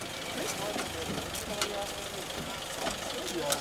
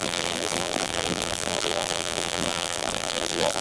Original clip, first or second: first